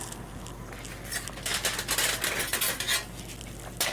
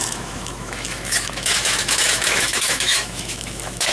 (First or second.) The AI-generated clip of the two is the second